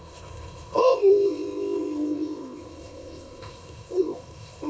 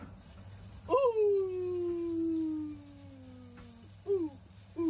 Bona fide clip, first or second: second